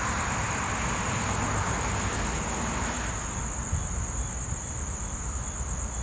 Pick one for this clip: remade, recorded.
recorded